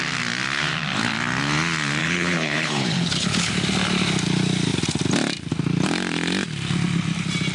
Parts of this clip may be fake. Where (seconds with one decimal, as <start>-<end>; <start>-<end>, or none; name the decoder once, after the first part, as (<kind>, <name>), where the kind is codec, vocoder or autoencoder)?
2.0-3.5 (codec, HILCodec)